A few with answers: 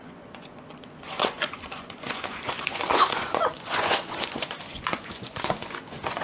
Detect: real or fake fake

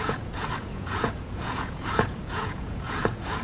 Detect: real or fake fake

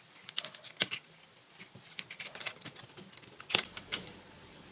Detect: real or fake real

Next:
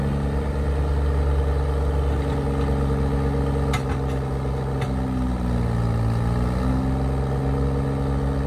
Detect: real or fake real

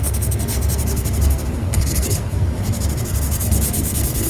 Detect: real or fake fake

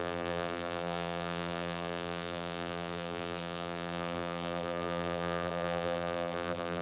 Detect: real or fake fake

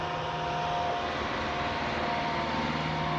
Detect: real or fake real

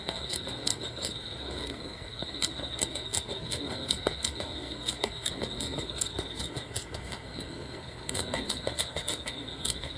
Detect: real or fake fake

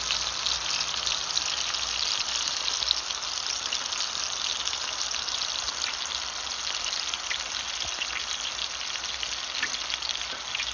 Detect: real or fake real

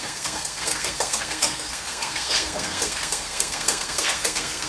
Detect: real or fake fake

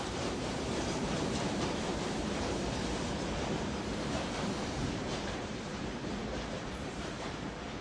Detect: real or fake fake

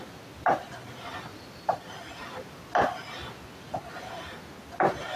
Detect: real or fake real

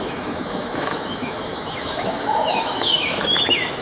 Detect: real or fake fake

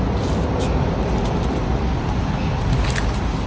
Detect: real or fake real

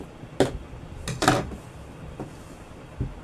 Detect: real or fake real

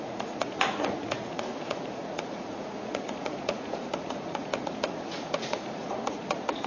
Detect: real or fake fake